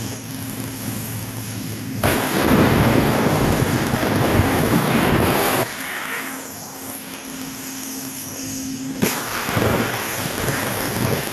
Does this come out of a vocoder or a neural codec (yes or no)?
yes